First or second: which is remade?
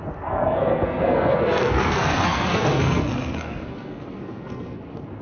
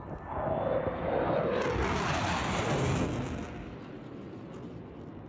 first